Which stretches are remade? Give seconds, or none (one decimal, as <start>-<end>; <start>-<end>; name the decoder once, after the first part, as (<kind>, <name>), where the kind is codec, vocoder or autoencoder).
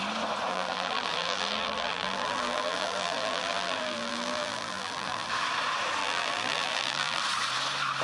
0.5-5.3 (vocoder, BigVGAN v2); 6.0-7.2